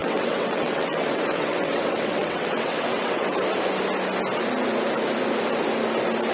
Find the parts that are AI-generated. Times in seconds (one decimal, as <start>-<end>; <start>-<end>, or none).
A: 0.0-3.4